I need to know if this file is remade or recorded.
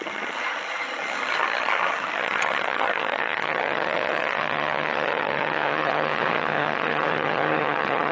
remade